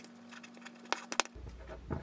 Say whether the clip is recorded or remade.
recorded